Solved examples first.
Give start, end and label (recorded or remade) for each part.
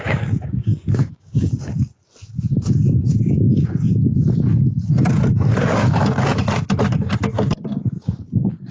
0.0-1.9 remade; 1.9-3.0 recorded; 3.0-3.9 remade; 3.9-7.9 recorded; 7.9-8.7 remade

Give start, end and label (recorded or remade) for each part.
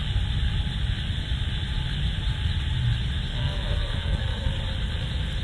0.0-3.3 recorded; 3.3-4.5 remade; 4.5-5.4 recorded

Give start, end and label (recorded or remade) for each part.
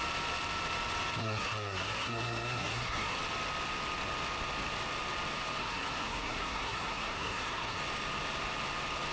0.0-1.2 recorded; 1.2-3.2 remade; 3.2-5.6 recorded; 5.6-7.8 remade; 7.8-9.1 recorded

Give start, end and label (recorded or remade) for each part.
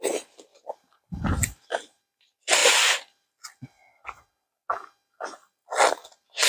0.0-0.5 recorded; 0.5-2.0 remade; 2.0-6.5 recorded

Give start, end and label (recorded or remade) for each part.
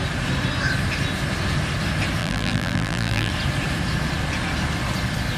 0.0-2.2 recorded; 2.2-3.3 remade; 3.3-5.4 recorded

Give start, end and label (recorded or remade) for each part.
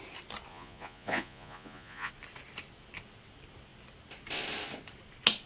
0.0-0.5 recorded; 0.5-2.1 remade; 2.1-5.5 recorded